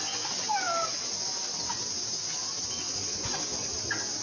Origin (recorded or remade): recorded